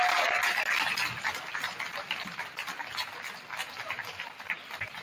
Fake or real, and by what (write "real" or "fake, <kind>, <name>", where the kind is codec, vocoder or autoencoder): real